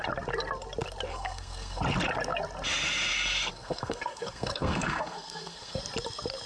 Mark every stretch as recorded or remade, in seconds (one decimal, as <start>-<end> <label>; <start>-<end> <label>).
0.0-1.1 recorded; 1.1-1.8 remade; 1.8-3.5 recorded; 3.5-5.8 remade; 5.8-6.5 recorded